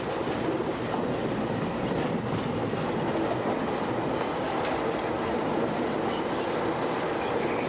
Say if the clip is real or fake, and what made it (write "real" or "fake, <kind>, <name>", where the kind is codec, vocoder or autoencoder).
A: real